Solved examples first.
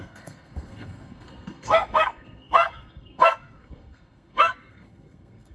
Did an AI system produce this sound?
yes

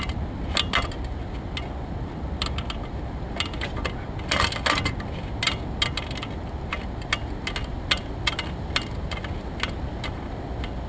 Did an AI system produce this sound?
no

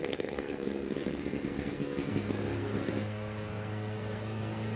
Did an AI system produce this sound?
yes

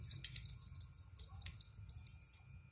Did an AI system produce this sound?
no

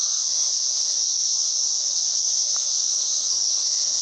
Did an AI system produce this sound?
yes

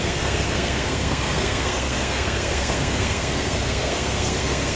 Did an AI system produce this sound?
yes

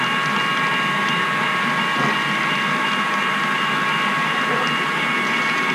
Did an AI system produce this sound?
no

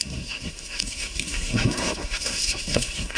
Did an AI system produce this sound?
yes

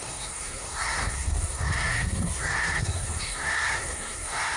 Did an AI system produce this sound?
yes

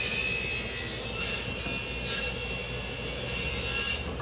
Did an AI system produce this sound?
no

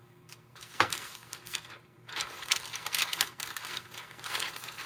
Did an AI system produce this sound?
yes